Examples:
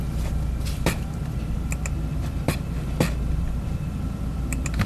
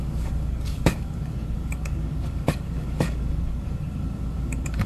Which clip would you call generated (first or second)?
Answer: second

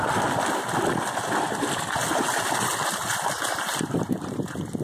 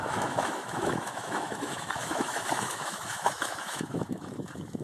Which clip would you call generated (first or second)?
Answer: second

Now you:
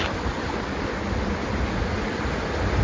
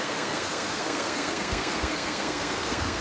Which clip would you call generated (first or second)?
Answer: second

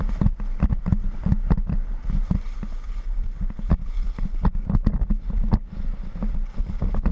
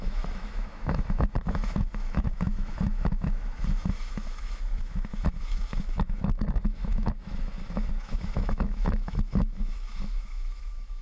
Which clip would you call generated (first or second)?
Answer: second